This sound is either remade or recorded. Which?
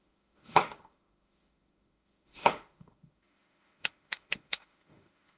remade